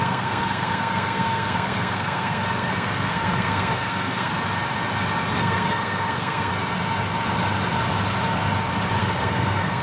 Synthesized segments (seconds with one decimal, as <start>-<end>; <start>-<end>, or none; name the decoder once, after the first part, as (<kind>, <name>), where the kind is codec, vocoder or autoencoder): 0.0-4.3 (codec, SNAC); 5.3-6.5; 9.0-9.8